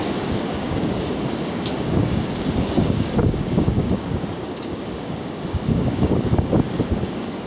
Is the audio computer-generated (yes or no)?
yes